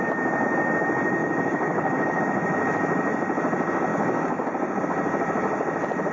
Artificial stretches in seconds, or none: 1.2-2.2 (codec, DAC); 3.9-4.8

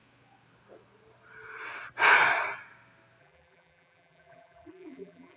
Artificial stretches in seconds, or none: 3.2-5.4 (vocoder, BigVGAN v2)

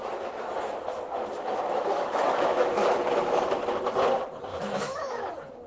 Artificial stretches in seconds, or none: 0.0-3.4 (autoencoder, DAC-VAE); 4.5-5.3

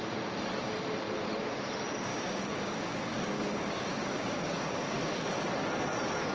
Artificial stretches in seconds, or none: 2.1-5.3 (codec, DAC)

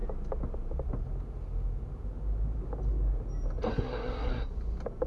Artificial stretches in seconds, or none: 3.7-4.5 (codec, SNAC)